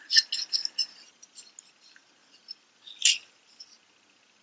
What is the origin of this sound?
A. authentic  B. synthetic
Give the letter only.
A